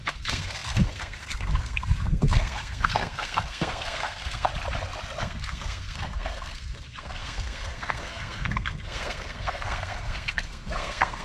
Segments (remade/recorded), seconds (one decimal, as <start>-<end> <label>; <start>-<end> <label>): 0.0-4.5 remade; 4.5-5.2 recorded; 5.2-11.2 remade